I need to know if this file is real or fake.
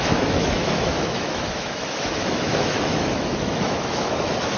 fake